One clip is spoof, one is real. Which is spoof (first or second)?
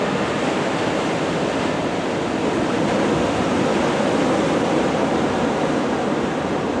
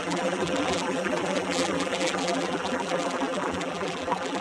second